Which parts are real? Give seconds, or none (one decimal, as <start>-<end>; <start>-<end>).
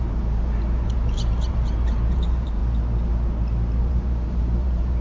2.6-3.8